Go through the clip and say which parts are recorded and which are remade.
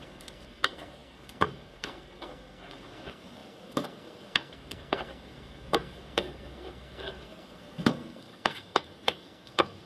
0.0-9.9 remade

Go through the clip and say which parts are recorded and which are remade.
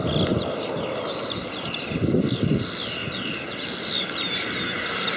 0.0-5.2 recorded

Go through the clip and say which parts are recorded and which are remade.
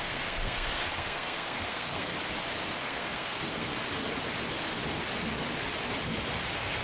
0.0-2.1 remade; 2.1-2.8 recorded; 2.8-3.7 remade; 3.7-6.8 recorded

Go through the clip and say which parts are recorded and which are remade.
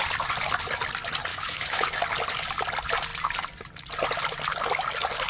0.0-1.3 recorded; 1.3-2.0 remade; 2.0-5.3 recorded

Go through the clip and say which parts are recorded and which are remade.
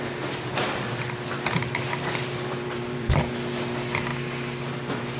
0.0-0.5 recorded; 0.5-3.3 remade; 3.3-5.2 recorded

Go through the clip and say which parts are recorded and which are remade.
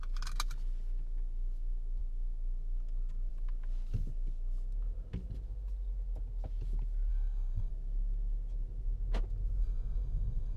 0.0-7.1 recorded; 7.1-7.7 remade; 7.7-9.6 recorded; 9.6-10.6 remade